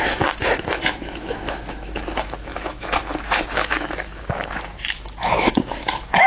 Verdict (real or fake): fake